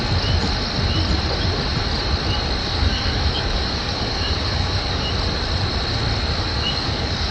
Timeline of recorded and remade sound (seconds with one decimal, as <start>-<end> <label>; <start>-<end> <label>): 0.0-2.6 recorded; 2.6-5.1 remade; 5.1-6.5 recorded; 6.5-7.3 remade